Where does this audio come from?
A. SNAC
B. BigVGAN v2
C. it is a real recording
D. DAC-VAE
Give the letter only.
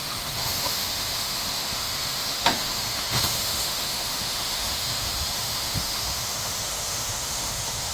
D